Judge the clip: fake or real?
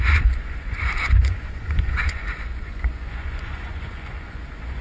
fake